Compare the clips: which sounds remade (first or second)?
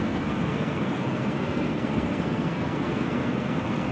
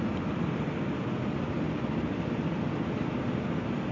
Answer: first